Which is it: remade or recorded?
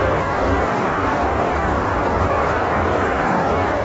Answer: remade